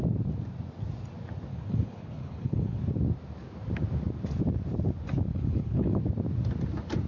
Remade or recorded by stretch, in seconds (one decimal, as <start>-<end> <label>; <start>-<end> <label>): 0.0-1.5 recorded; 1.5-2.8 remade; 2.8-5.3 recorded; 5.3-6.0 remade; 6.0-7.1 recorded